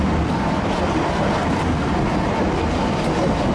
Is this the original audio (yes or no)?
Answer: no